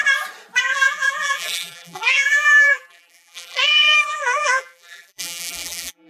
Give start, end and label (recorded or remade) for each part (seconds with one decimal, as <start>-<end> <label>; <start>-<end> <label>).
0.0-0.6 recorded; 0.6-6.1 remade